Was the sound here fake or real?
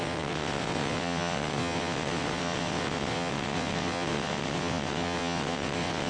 fake